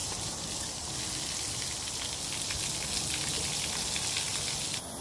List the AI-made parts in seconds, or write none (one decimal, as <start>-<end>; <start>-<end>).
none